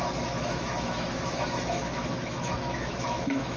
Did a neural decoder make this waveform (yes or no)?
yes